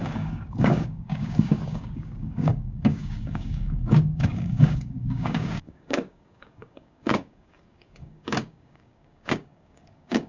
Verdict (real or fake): fake